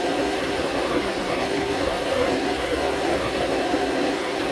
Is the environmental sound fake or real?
fake